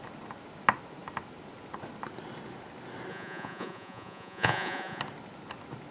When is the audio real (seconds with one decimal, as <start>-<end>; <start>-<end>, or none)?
0.0-3.1; 5.0-5.9